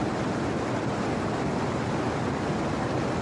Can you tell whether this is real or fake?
real